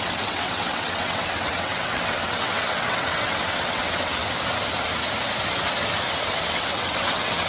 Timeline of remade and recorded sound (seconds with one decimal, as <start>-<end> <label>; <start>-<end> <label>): 0.0-4.2 remade; 4.2-6.4 recorded; 6.4-7.5 remade